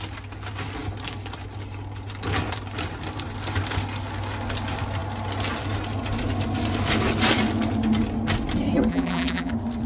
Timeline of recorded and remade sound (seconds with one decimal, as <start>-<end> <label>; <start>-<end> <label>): 0.0-8.9 recorded; 8.9-9.5 remade; 9.5-9.9 recorded